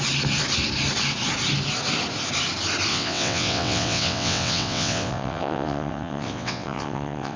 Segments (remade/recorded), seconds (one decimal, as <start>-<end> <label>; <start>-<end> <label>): 0.0-2.9 recorded; 2.9-7.4 remade